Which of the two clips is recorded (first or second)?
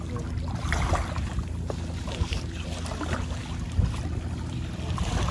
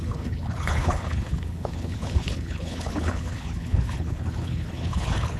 first